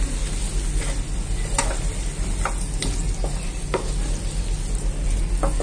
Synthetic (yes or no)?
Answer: no